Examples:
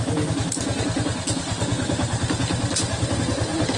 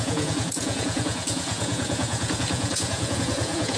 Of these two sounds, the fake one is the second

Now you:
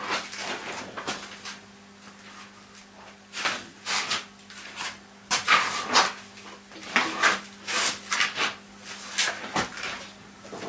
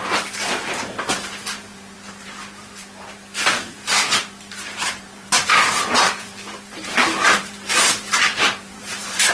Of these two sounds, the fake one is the second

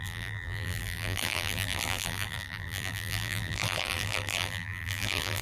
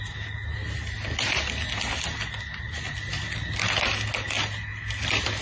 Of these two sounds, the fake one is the first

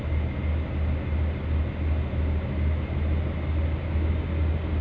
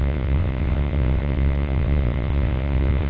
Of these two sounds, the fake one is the second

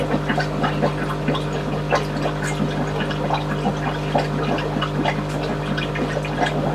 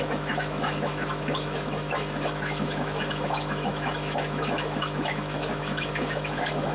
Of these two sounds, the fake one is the second